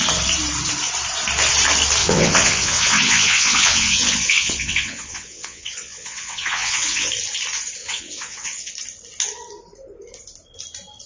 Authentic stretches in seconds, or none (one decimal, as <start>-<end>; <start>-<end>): 0.0-2.0; 7.1-7.8; 8.7-11.1